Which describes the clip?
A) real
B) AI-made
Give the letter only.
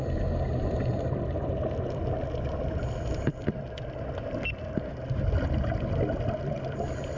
A